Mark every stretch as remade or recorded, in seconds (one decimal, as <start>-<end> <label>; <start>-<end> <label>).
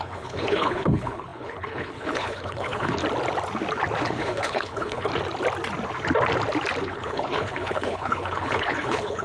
0.0-3.0 remade; 3.0-4.0 recorded; 4.0-5.1 remade; 5.1-6.8 recorded; 6.8-9.2 remade